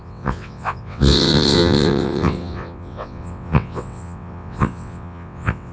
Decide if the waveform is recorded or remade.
remade